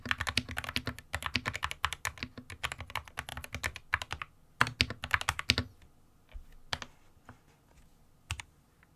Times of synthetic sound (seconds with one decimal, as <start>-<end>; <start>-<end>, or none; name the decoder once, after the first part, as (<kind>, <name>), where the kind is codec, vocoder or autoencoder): none